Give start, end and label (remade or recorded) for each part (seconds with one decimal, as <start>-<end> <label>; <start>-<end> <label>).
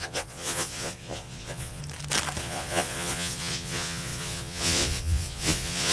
0.0-1.8 remade; 1.8-2.4 recorded; 2.4-5.9 remade